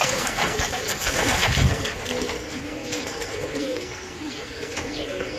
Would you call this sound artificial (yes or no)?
yes